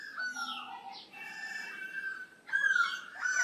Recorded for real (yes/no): no